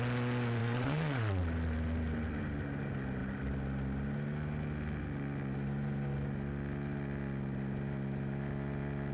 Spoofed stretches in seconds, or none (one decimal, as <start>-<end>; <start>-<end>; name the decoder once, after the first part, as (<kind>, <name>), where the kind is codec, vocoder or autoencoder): 0.6-1.4 (vocoder, WaveNeXt)